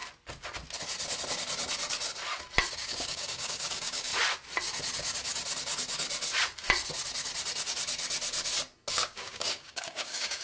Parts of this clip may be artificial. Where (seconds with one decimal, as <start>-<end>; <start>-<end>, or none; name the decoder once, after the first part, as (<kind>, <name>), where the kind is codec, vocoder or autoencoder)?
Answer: 2.7-4.1 (codec, DAC); 8.9-10.4